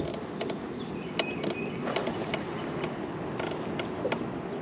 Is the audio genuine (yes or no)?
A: yes